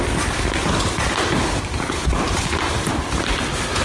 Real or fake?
real